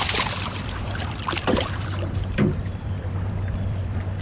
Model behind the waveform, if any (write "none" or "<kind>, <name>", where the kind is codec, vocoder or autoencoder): vocoder, BigVGAN v2